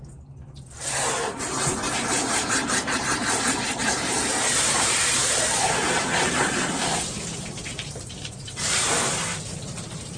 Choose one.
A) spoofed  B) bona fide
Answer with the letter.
A